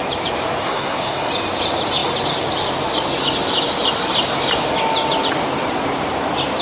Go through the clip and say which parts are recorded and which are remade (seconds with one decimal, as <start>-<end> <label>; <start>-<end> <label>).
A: 0.0-0.6 recorded; 0.6-1.3 remade; 1.3-6.6 recorded